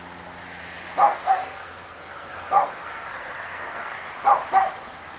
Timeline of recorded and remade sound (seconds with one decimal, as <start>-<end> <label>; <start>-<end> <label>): 0.0-1.0 recorded; 1.0-4.1 remade; 4.1-5.2 recorded